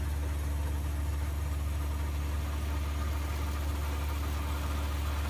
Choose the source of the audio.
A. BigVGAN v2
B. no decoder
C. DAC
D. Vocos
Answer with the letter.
B